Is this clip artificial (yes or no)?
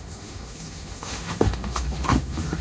yes